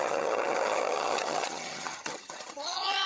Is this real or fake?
fake